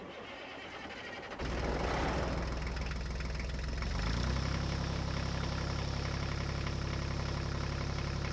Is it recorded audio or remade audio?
recorded